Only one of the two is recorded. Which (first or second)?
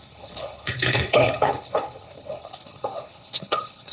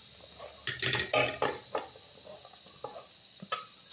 second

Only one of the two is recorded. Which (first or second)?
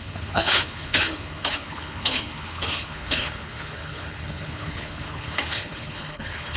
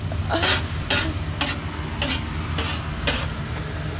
second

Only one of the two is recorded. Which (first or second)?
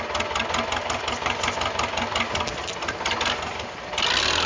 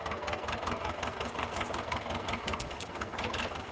first